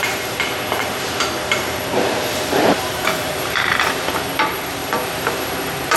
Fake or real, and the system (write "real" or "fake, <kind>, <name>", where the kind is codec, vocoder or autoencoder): fake, vocoder, BigVGAN v2